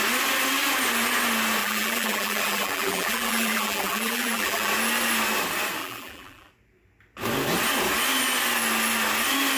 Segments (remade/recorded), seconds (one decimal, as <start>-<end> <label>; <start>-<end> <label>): 0.0-1.6 recorded; 1.6-4.7 remade; 4.7-5.8 recorded; 5.8-6.5 remade; 6.5-9.6 recorded